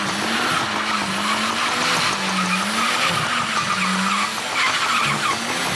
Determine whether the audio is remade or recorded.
recorded